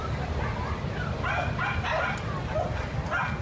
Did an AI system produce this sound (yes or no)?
no